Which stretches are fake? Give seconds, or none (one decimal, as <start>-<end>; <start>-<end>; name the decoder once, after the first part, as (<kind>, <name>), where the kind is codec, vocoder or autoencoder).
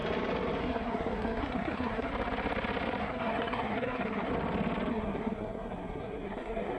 0.6-2.1 (codec, SNAC); 3.0-4.3; 4.9-6.8